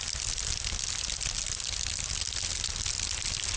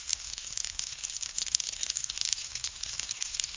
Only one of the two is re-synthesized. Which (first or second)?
second